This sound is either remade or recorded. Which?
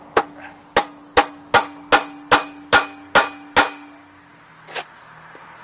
recorded